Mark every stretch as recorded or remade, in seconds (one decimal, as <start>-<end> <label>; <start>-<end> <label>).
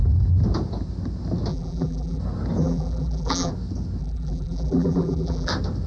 0.0-1.5 recorded; 1.5-2.2 remade; 2.2-2.6 recorded; 2.6-3.5 remade; 3.5-4.0 recorded; 4.0-5.5 remade; 5.5-5.9 recorded